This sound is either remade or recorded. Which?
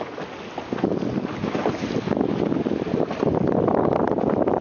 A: recorded